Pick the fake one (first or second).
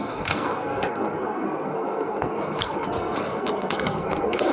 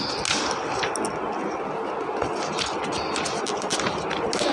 first